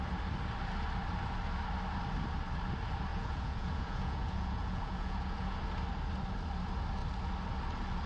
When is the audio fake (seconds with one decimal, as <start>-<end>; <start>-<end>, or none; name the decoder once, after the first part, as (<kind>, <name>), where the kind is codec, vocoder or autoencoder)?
3.1-5.6 (vocoder, Vocos)